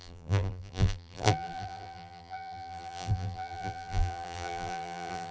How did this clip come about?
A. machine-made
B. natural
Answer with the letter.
A